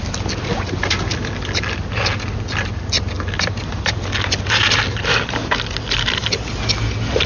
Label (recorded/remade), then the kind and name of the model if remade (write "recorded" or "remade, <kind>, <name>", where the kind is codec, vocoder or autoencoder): recorded